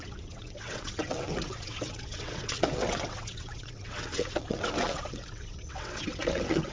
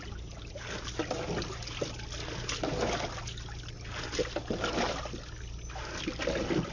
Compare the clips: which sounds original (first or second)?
second